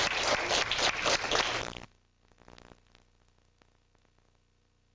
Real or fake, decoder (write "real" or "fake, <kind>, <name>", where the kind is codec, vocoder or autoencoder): real